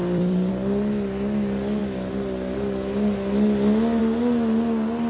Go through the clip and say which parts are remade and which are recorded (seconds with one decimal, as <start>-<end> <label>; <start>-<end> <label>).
0.0-0.5 remade; 0.5-5.1 recorded